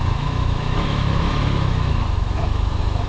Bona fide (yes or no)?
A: no